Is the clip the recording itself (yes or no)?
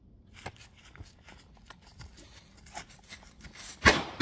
yes